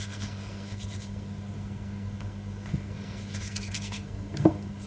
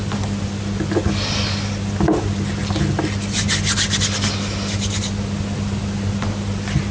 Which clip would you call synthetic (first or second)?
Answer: first